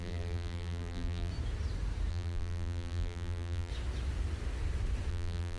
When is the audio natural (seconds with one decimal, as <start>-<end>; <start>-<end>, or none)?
1.3-2.1; 3.7-5.1